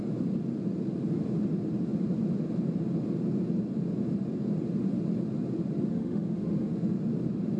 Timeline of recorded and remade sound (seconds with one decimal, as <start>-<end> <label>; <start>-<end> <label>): 0.0-5.9 recorded; 5.9-7.0 remade; 7.0-7.6 recorded